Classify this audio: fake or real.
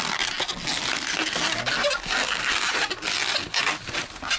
real